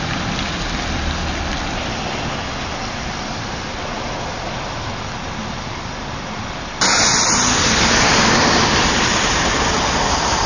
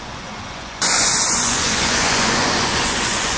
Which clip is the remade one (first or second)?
second